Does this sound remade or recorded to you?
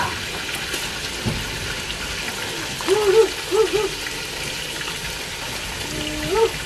recorded